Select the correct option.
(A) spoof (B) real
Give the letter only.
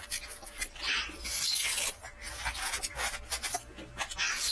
B